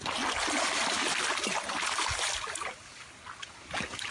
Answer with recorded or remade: recorded